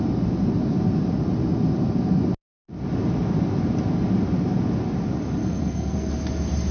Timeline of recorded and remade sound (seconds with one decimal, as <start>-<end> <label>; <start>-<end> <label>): 0.0-5.4 recorded; 5.4-6.1 remade; 6.1-6.7 recorded